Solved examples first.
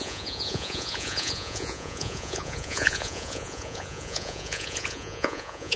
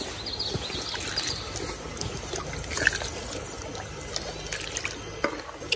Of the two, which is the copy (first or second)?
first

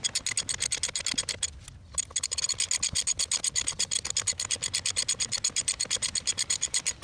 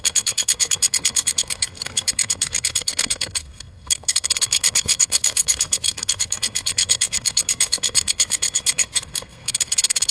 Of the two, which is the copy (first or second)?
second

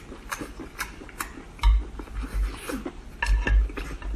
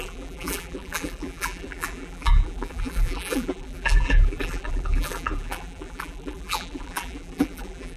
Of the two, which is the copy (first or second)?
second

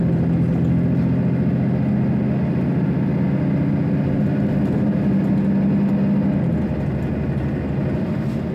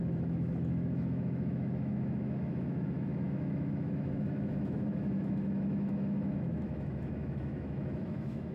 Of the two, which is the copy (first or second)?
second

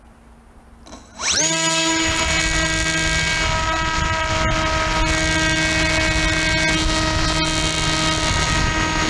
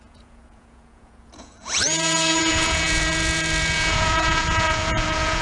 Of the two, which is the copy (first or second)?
second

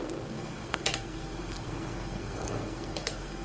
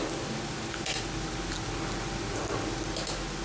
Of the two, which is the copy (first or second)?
first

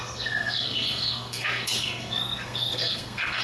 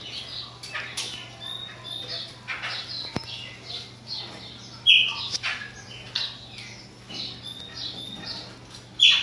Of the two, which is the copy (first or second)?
first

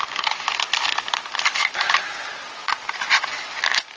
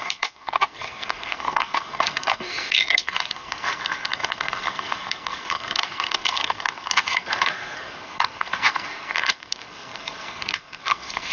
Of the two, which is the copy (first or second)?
second